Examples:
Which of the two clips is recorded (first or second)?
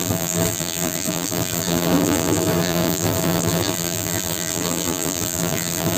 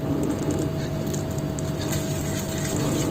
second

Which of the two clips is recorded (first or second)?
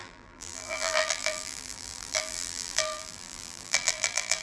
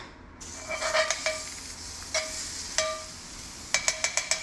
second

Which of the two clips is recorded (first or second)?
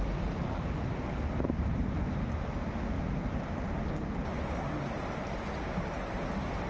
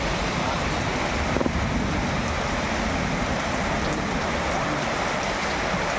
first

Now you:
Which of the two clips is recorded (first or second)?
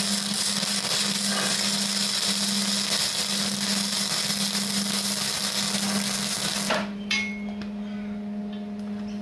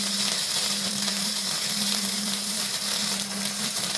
first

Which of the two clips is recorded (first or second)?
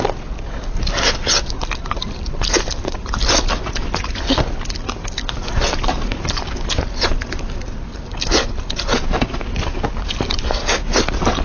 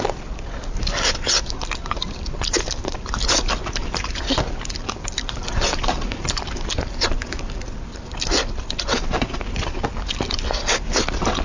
first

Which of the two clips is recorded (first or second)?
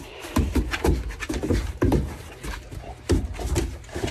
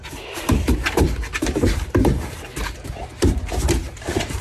first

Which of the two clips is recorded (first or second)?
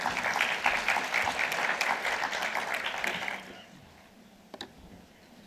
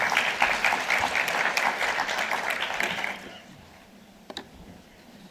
first